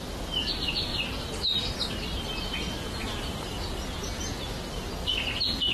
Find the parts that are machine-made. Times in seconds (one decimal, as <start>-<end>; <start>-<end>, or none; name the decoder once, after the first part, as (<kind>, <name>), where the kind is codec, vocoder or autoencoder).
none